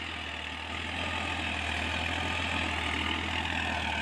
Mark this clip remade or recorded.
recorded